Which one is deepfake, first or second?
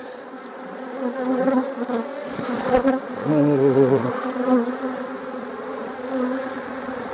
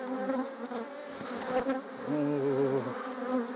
first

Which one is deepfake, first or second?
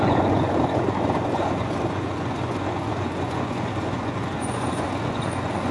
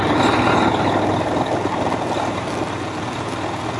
first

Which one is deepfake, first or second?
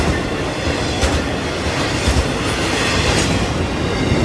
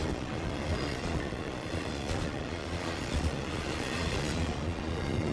second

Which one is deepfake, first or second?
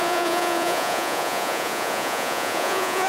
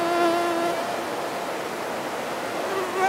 first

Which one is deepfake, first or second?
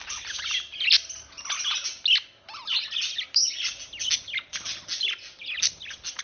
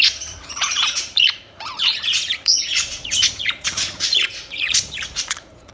second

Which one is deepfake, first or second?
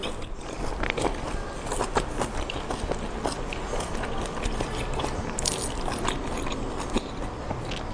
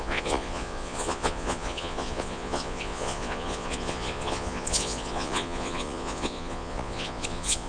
second